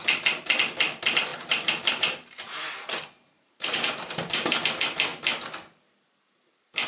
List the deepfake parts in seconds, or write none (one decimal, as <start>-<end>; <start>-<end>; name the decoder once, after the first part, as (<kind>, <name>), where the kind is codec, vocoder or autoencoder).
1.3-4.5 (vocoder, BigVGAN v2)